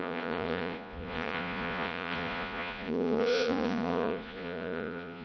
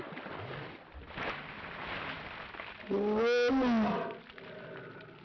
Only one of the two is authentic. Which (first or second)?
second